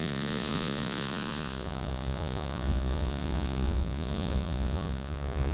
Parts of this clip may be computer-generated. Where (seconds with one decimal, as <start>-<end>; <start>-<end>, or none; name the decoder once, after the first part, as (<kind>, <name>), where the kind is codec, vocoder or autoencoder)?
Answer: 0.0-5.5 (vocoder, Vocos)